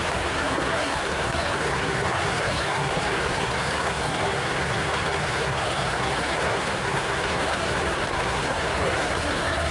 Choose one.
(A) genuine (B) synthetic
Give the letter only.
B